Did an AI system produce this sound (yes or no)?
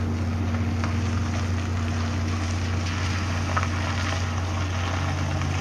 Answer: no